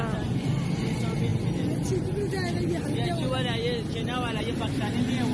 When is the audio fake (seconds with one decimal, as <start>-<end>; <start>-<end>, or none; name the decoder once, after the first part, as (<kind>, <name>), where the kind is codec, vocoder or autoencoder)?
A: none